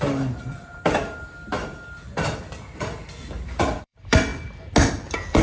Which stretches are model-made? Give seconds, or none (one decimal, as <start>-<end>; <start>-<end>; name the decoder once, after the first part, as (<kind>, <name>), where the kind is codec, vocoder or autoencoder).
0.0-4.3 (vocoder, BigVGAN v2); 4.9-5.4